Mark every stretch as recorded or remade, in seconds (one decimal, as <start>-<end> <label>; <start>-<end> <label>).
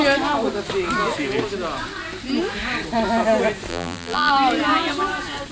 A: 0.0-3.7 recorded; 3.7-4.3 remade; 4.3-5.5 recorded